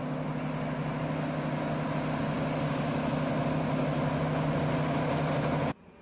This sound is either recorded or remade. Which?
recorded